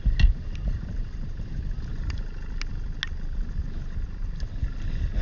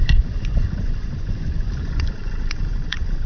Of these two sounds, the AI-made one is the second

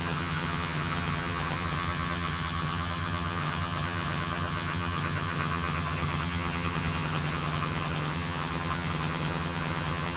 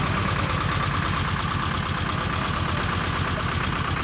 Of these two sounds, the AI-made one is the first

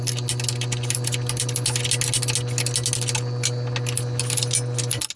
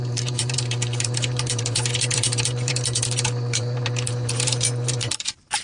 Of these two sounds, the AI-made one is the second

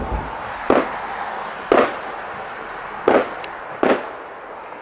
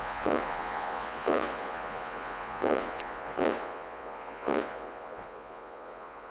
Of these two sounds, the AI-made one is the second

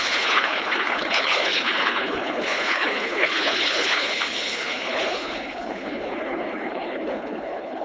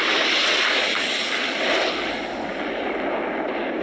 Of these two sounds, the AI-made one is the first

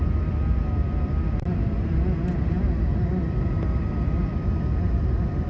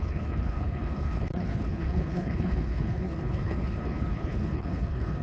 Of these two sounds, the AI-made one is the second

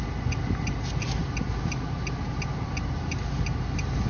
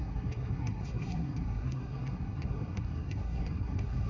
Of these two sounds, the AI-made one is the second